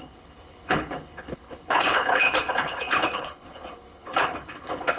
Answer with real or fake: fake